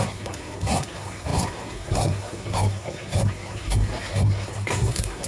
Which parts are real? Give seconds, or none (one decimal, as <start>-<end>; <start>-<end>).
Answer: none